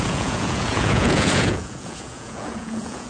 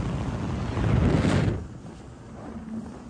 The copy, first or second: first